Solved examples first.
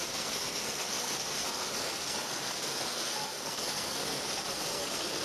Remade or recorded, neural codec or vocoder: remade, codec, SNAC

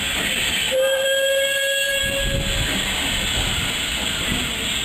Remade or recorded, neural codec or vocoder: recorded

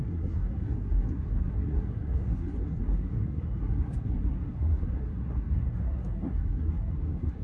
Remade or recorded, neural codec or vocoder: remade, codec, SNAC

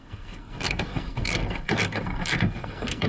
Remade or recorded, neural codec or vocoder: remade, codec, SNAC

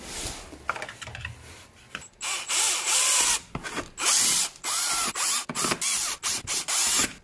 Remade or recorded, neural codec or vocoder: recorded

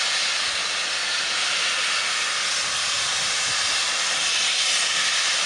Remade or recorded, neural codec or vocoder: recorded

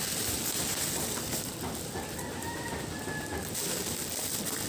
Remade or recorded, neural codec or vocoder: recorded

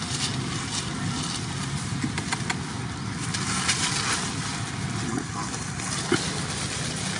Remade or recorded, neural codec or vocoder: recorded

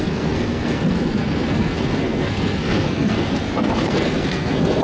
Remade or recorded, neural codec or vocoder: remade, codec, SNAC